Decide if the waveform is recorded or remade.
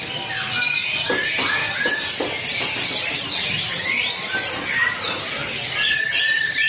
recorded